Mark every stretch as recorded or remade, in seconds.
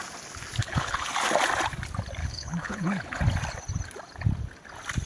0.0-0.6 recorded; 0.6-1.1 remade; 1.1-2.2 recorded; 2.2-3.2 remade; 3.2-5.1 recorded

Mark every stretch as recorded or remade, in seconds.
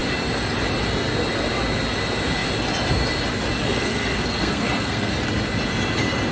0.0-3.6 recorded; 3.6-5.1 remade; 5.1-6.3 recorded